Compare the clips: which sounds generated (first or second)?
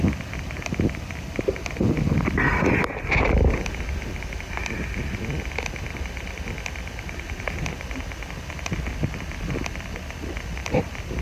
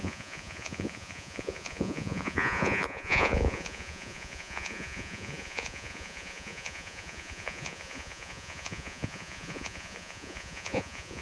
second